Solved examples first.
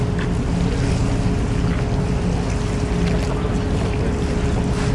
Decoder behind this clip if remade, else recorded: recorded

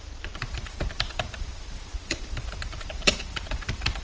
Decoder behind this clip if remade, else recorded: remade, vocoder, BigVGAN v2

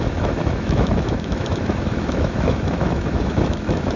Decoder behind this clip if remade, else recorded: remade, autoencoder, DAC-VAE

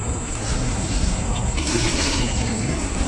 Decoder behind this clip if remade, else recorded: remade, codec, SNAC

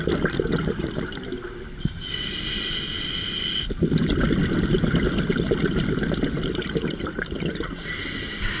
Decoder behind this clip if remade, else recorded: recorded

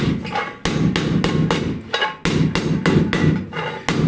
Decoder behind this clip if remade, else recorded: recorded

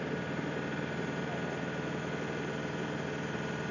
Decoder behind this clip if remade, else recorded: recorded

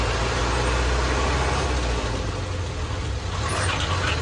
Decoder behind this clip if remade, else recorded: recorded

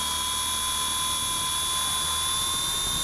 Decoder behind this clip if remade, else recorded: recorded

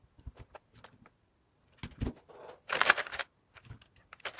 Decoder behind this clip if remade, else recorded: recorded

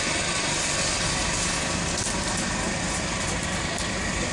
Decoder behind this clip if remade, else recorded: recorded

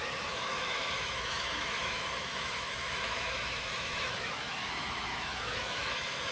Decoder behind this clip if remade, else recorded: remade, autoencoder, DAC-VAE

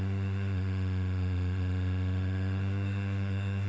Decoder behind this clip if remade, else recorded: remade, autoencoder, DAC-VAE